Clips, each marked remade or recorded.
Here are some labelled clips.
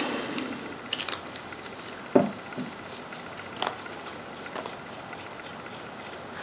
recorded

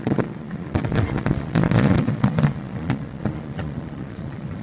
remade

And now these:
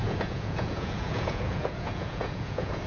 remade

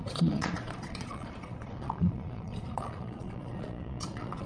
remade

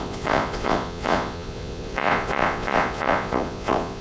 remade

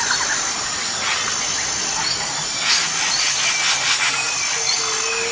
recorded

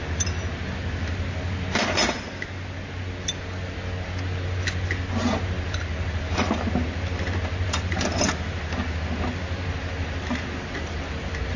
recorded